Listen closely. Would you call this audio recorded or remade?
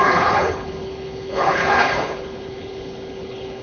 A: remade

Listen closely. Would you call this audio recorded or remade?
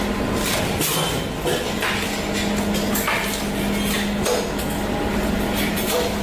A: recorded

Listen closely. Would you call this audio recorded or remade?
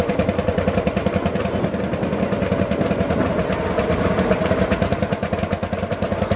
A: recorded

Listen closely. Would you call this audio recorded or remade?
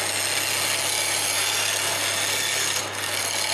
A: recorded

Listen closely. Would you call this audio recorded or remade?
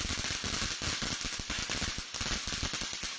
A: recorded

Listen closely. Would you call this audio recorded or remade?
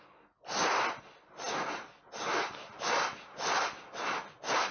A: recorded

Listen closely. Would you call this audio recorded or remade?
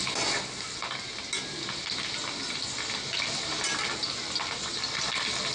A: recorded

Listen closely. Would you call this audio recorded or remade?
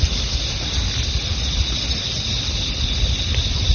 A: recorded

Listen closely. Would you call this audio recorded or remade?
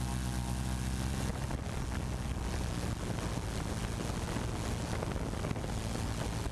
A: recorded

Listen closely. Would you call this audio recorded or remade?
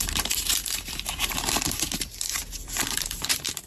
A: remade